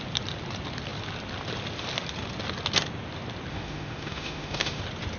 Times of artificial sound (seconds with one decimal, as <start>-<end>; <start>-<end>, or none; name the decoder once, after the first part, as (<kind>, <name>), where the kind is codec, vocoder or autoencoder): 3.5-4.8 (autoencoder, DAC-VAE)

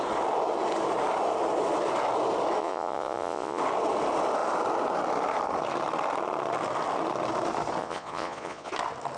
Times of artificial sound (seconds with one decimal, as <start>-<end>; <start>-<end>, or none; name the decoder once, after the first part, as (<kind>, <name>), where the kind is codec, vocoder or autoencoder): 2.6-3.6 (vocoder, Vocos); 7.8-8.7

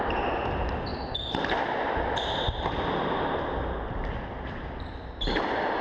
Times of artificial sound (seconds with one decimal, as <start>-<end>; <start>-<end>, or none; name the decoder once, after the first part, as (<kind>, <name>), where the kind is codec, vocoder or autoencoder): none

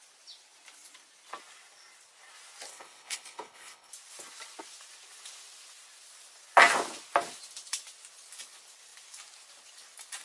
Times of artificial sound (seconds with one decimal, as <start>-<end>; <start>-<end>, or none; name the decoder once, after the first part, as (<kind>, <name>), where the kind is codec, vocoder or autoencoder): 2.7-3.9 (codec, HILCodec)

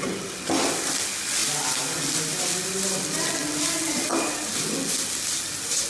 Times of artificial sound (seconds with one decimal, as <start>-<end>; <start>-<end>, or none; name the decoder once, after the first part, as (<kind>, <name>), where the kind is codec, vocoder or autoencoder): none